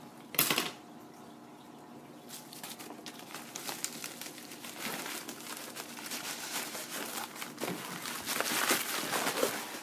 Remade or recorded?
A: recorded